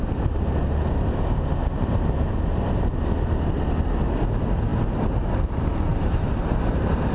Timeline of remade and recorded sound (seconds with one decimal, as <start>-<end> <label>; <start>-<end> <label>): 0.0-5.9 recorded; 5.9-7.1 remade